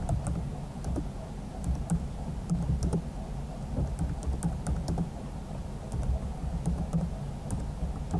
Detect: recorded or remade recorded